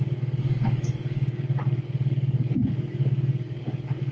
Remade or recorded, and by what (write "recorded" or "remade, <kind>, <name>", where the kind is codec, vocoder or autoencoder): remade, codec, DAC